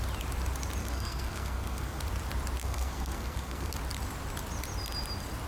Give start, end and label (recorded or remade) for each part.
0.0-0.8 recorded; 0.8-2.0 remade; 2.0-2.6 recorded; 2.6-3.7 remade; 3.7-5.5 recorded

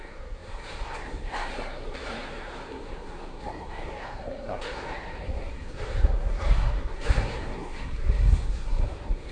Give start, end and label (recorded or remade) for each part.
0.0-9.3 remade

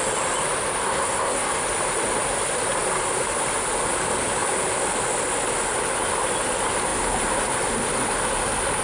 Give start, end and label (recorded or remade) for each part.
0.0-0.8 recorded; 0.8-1.6 remade; 1.6-8.8 recorded

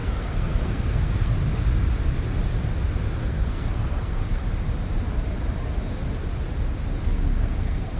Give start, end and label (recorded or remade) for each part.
0.0-1.3 remade; 1.3-3.2 recorded; 3.2-4.4 remade; 4.4-7.0 recorded; 7.0-8.0 remade

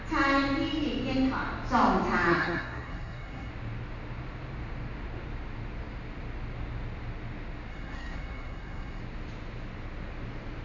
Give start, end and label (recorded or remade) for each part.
0.0-2.3 recorded; 2.3-3.5 remade; 3.5-7.7 recorded; 7.7-9.0 remade; 9.0-10.6 recorded